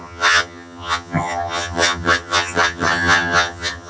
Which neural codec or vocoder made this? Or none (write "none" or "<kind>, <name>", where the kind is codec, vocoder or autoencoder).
vocoder, HiFi-GAN